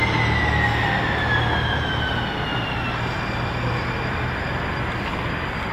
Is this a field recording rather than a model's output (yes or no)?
yes